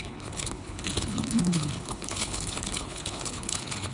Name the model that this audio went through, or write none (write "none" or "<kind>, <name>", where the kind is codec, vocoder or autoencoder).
codec, HILCodec